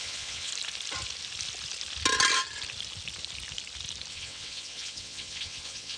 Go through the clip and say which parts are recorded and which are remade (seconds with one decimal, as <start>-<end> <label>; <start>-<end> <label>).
0.0-0.5 remade; 0.5-4.1 recorded; 4.1-6.0 remade